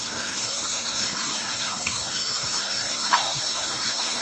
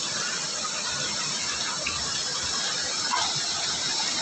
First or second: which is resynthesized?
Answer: first